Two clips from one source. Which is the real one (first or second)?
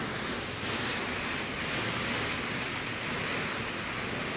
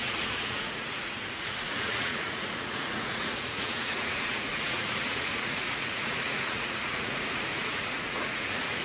first